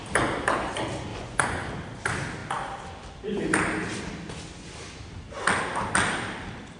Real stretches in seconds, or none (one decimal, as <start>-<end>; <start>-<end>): 0.0-1.1; 1.7-6.8

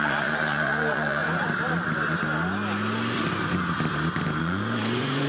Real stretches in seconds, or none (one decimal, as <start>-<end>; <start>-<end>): 1.2-4.4

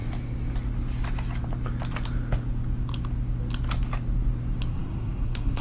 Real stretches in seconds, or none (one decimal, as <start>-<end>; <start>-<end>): 0.0-4.7

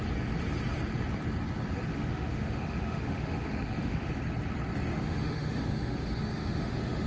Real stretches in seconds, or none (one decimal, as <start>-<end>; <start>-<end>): 0.0-1.9; 4.1-4.9

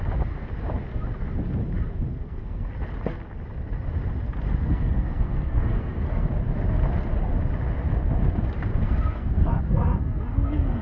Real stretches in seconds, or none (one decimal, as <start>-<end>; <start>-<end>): 0.0-2.1; 2.7-4.6; 6.3-8.7

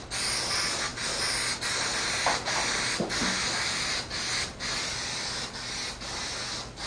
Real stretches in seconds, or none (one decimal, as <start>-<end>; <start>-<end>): 0.0-6.9

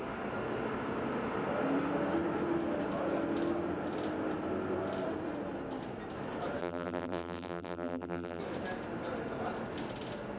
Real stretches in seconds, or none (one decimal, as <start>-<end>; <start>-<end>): 0.0-6.6; 8.4-10.4